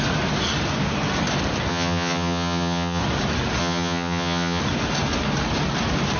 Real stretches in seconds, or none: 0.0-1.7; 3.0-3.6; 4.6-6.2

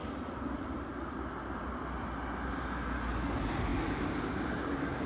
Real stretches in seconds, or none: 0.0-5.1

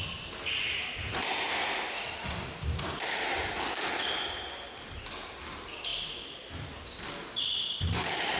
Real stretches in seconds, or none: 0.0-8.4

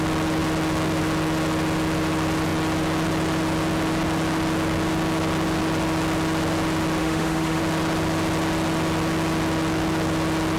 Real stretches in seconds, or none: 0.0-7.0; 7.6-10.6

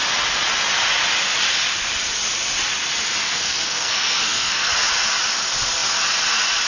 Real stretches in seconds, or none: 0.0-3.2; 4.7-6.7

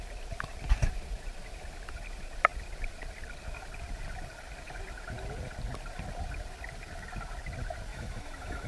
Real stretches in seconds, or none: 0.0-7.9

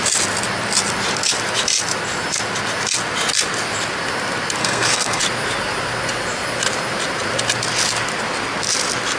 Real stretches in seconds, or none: 0.0-4.6; 5.2-9.2